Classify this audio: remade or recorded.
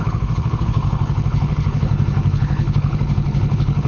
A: remade